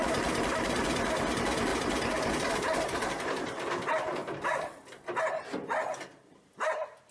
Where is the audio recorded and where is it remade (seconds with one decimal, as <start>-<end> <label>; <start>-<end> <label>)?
0.0-4.2 recorded; 4.2-4.8 remade; 4.8-7.1 recorded